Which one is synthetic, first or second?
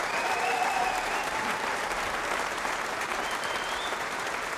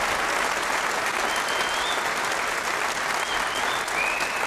first